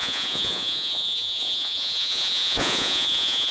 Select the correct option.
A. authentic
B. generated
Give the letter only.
B